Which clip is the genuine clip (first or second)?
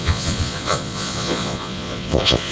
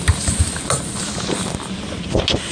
second